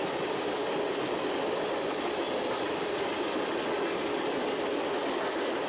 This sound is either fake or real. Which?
real